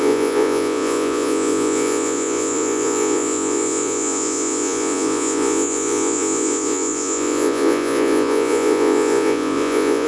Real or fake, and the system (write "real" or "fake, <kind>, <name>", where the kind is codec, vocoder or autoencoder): fake, vocoder, Vocos